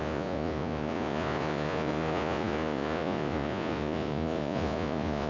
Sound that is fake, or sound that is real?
fake